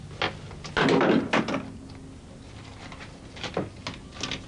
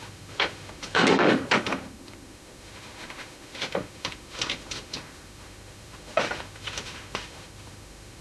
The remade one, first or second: second